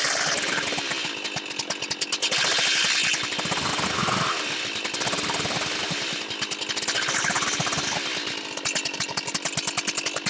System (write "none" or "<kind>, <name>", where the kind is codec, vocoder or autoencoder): none